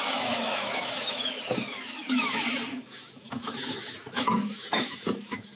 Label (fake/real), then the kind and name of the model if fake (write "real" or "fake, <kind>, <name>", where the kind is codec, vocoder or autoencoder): fake, autoencoder, DAC-VAE